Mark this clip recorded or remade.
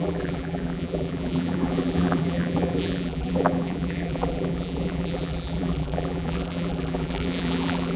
remade